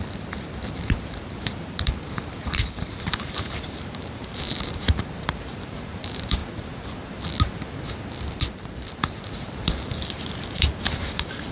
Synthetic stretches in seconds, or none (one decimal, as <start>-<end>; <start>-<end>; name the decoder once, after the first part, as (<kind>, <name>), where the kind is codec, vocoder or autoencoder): 0.0-6.4 (vocoder, BigVGAN v2); 9.2-11.5